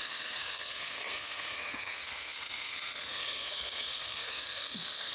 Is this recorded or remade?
remade